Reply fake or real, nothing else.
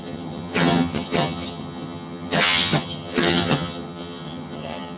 fake